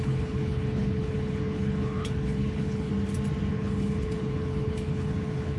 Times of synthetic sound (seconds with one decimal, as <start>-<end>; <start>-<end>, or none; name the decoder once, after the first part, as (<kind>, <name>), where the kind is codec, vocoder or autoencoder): 0.0-2.9 (codec, HILCodec); 3.5-5.6